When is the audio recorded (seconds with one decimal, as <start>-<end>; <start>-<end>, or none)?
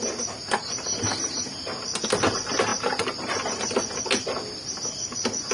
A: 0.0-0.4; 1.5-2.7; 3.5-5.5